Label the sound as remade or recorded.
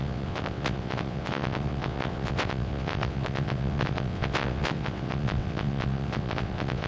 remade